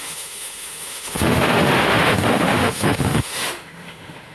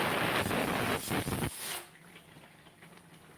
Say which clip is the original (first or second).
second